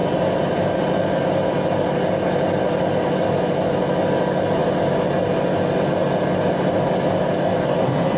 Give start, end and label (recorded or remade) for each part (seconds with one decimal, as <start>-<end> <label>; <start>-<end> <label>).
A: 0.0-8.2 recorded